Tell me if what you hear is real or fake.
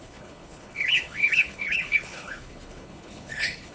fake